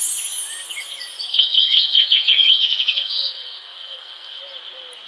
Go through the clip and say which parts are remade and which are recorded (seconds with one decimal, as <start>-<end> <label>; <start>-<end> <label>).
0.0-1.3 recorded; 1.3-4.4 remade; 4.4-5.1 recorded